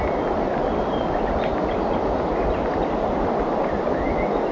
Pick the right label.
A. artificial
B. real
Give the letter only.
B